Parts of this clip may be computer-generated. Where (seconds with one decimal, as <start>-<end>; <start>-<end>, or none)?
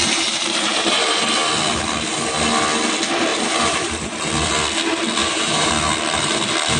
0.0-1.2; 3.3-4.3; 5.2-5.7